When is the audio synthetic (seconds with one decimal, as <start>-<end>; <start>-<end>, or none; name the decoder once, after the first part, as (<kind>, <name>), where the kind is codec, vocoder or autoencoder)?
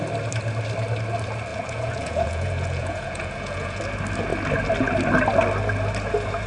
1.5-3.8 (vocoder, Vocos)